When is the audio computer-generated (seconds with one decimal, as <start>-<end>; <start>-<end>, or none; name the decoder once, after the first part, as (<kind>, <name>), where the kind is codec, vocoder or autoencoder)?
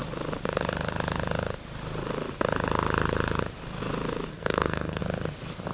4.3-5.0 (codec, SNAC)